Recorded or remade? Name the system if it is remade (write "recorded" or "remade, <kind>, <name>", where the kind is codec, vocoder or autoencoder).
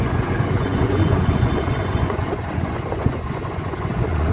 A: remade, vocoder, Vocos